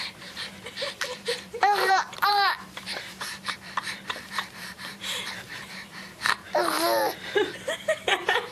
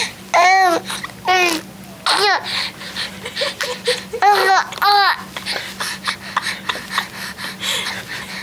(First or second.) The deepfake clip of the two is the first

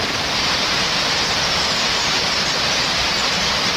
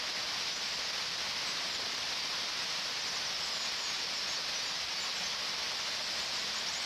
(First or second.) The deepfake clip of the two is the first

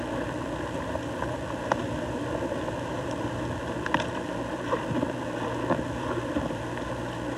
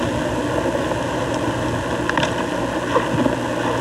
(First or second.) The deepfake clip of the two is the first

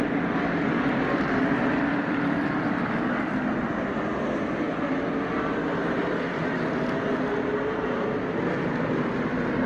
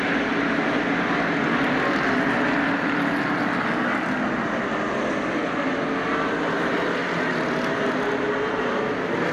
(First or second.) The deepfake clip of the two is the first